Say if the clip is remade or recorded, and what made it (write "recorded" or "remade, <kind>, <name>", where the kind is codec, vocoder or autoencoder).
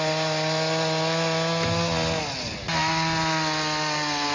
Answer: recorded